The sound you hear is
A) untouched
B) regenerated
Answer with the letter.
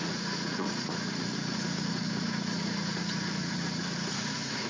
B